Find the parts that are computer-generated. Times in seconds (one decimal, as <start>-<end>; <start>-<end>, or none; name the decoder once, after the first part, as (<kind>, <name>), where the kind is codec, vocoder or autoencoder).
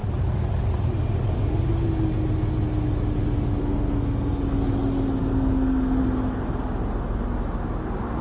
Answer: 3.6-4.4 (codec, SNAC); 5.2-6.0